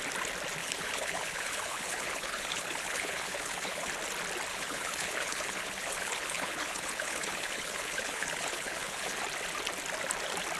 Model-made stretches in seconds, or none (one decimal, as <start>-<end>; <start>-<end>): 0.6-3.9; 4.5-9.2